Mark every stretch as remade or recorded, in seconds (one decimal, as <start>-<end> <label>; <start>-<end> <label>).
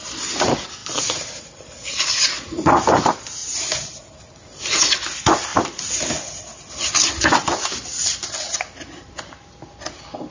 0.0-0.8 recorded; 0.8-1.4 remade; 1.4-3.4 recorded; 3.4-4.6 remade; 4.6-10.3 recorded